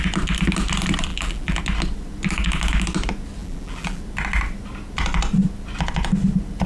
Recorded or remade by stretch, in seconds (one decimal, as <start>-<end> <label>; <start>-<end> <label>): 0.0-1.1 recorded; 1.1-1.6 remade; 1.6-3.4 recorded; 3.4-4.0 remade; 4.0-6.7 recorded